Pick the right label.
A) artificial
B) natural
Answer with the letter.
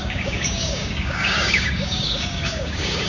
A